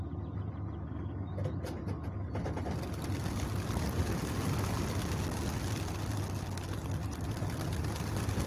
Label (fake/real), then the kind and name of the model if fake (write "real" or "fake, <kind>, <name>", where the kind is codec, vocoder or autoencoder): real